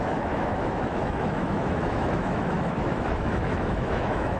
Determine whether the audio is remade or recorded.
remade